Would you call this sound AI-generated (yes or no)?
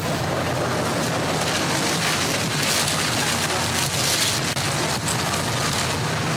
no